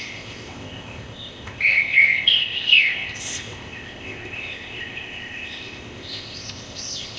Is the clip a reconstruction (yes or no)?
yes